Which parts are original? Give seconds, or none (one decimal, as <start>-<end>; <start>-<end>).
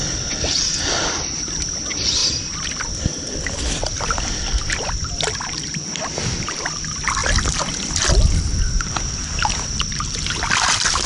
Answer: 0.0-0.5; 2.2-3.0; 7.2-7.7